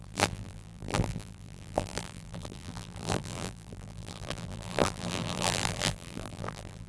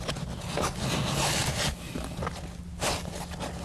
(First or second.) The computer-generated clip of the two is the first